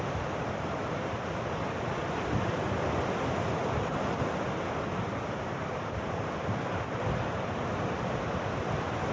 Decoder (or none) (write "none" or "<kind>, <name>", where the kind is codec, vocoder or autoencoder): none